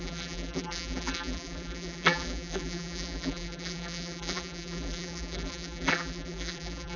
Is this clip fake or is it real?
fake